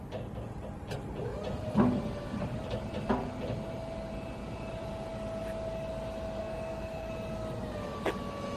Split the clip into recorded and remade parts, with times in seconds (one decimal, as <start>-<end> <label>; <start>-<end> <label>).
0.0-6.4 recorded; 6.4-7.1 remade; 7.1-8.6 recorded